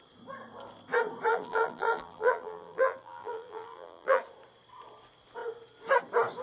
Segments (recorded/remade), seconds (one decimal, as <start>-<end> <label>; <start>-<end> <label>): 0.0-1.3 recorded; 1.3-4.2 remade; 4.2-6.4 recorded